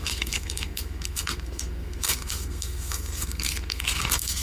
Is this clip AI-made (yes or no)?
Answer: yes